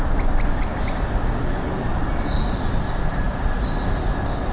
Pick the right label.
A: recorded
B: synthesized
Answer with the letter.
A